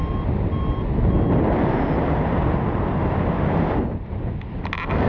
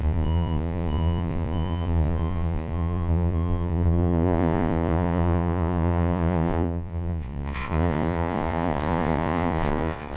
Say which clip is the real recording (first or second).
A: first